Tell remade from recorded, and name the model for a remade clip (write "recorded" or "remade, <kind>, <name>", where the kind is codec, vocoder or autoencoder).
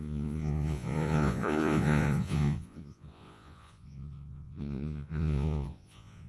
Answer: remade, vocoder, Vocos